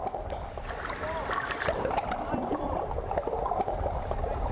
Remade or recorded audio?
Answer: recorded